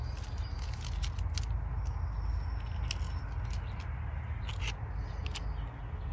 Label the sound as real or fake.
real